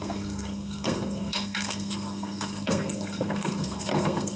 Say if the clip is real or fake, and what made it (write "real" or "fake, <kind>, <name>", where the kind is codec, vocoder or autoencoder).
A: fake, codec, SNAC